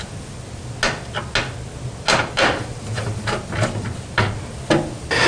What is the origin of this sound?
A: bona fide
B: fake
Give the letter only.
A